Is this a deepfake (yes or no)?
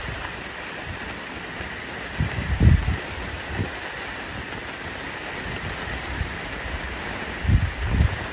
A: no